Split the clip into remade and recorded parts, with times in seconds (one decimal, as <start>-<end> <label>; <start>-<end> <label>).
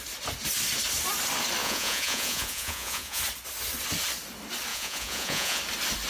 0.0-1.6 recorded; 1.6-3.2 remade; 3.2-4.7 recorded; 4.7-5.6 remade; 5.6-6.1 recorded